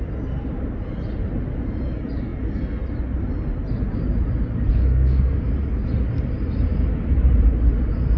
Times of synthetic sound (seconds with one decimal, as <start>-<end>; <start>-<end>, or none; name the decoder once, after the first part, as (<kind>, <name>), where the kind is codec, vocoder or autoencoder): 4.7-5.4 (codec, SNAC)